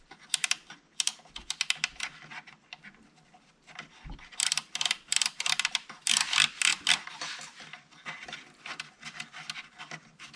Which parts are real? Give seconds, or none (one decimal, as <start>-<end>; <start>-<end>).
0.0-10.4

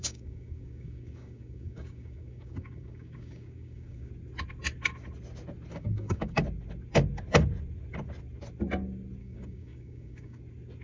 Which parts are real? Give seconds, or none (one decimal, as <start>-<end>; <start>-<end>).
4.1-5.7; 6.4-9.2; 10.4-10.8

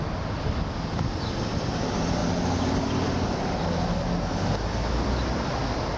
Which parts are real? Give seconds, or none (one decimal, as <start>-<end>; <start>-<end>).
0.0-6.0

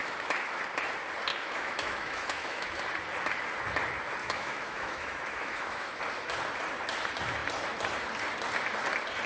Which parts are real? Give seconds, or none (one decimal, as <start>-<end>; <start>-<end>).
0.6-1.3; 2.8-4.2; 6.0-9.3

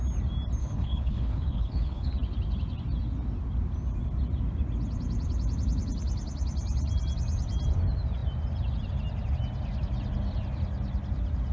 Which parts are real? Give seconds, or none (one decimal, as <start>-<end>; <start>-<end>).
0.0-0.6; 2.1-11.5

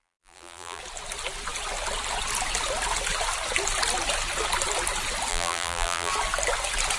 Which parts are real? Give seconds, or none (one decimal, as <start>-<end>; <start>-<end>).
0.8-5.3; 6.1-7.0